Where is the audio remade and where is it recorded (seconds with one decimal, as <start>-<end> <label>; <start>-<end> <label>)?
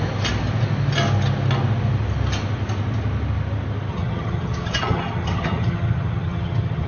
0.0-3.9 recorded; 3.9-6.9 remade